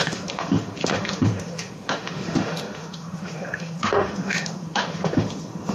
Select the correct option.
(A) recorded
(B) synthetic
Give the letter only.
B